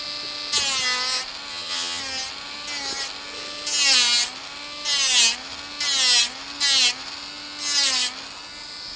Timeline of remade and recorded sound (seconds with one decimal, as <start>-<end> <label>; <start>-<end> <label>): 0.0-1.5 recorded; 1.5-2.0 remade; 2.0-9.0 recorded